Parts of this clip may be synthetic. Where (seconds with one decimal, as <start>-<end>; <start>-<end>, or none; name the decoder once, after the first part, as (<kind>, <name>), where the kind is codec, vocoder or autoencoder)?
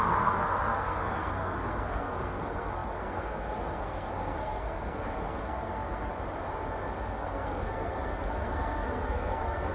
0.0-6.1 (codec, SNAC); 7.0-9.7